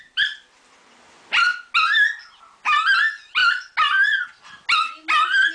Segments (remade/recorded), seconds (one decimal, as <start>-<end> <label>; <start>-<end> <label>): 0.0-5.5 recorded